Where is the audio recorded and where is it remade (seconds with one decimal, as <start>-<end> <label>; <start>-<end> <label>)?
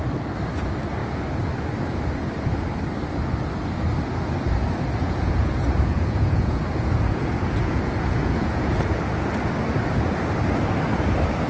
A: 0.0-5.0 recorded; 5.0-8.9 remade; 8.9-11.5 recorded